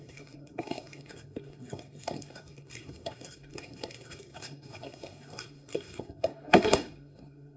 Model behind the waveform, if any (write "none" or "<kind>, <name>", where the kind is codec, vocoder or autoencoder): codec, SNAC